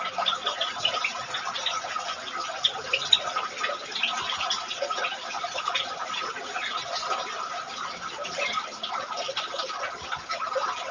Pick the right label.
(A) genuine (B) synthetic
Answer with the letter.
A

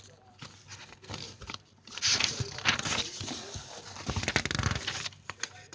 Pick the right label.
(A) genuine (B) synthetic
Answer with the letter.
A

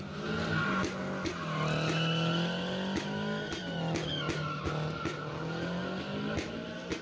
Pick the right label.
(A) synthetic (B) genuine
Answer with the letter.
B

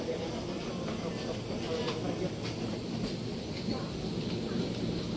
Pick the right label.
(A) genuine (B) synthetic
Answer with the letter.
A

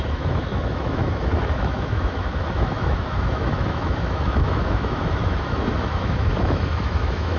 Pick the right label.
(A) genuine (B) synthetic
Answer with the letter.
B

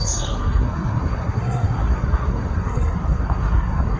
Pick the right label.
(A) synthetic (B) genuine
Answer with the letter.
A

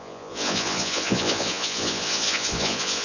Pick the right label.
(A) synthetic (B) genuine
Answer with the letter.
A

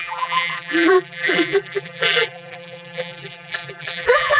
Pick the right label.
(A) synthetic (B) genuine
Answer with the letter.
A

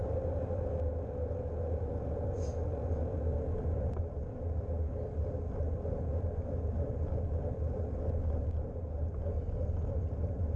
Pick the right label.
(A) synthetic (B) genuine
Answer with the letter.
B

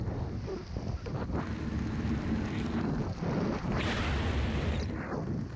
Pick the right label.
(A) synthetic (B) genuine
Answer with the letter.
B